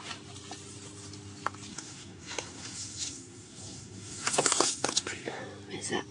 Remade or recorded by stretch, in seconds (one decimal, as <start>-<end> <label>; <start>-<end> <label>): 0.0-1.7 recorded; 1.7-5.4 remade; 5.4-6.1 recorded